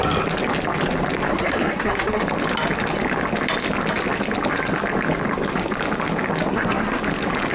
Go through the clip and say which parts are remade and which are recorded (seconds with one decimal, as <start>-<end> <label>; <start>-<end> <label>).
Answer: 0.0-1.3 recorded; 1.3-2.2 remade; 2.2-6.5 recorded; 6.5-7.0 remade; 7.0-7.5 recorded